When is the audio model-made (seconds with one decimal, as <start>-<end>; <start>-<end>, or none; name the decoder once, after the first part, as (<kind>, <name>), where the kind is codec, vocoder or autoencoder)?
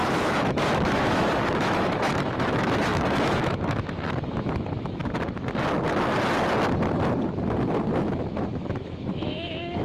0.0-5.0 (autoencoder, DAC-VAE); 8.0-9.8